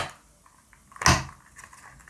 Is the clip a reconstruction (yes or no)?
no